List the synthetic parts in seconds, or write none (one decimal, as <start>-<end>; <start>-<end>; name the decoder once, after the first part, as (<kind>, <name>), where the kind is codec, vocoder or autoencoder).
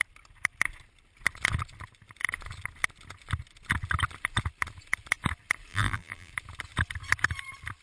5.7-6.3 (vocoder, BigVGAN v2)